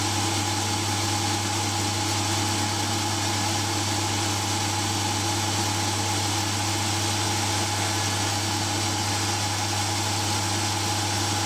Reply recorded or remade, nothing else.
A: recorded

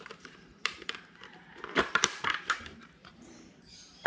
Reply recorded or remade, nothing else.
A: remade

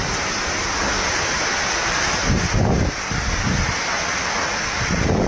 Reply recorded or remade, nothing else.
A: recorded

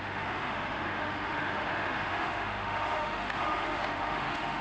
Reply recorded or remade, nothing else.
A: remade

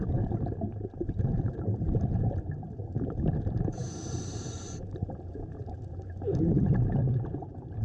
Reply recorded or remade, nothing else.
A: remade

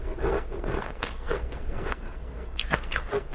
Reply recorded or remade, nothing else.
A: remade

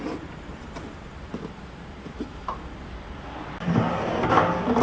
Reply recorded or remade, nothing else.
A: recorded